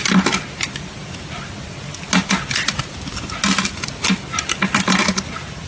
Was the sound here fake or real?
real